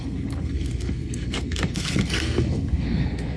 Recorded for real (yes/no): no